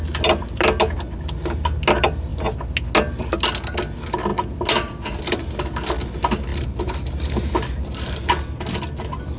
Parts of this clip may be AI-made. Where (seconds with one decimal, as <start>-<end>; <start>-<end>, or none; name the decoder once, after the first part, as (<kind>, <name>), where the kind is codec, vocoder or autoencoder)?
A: 6.5-8.3 (vocoder, BigVGAN v2)